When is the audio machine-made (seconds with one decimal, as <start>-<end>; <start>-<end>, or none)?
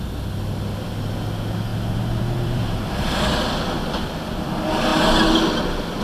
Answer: 1.7-2.6